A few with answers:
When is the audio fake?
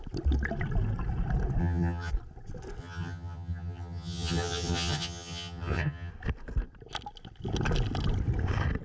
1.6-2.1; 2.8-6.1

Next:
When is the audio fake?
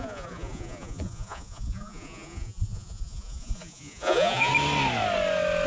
0.0-4.5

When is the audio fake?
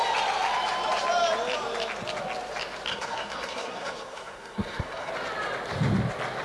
2.9-5.1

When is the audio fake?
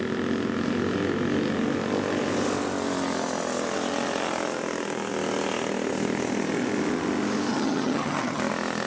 7.5-8.4